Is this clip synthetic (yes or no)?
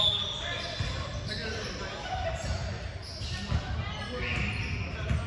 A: no